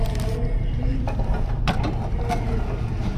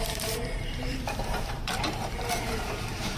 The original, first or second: first